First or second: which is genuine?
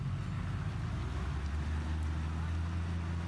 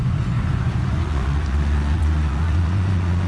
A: first